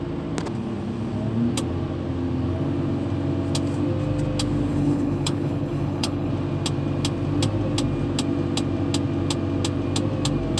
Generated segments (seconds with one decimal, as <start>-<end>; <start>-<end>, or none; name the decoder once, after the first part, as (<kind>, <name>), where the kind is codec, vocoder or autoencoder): 4.7-6.3 (codec, HILCodec)